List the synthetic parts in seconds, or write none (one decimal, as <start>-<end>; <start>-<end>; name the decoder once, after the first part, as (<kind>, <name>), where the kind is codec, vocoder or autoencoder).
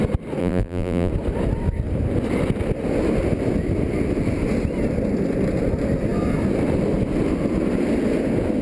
0.4-1.1 (vocoder, BigVGAN v2)